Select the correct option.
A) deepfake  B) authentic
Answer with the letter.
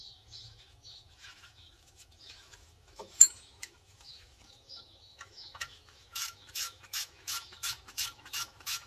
A